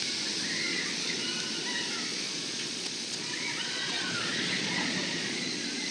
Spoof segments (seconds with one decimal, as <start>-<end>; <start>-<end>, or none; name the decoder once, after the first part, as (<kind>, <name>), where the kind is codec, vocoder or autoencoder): 0.7-1.2 (vocoder, Vocos); 2.1-5.9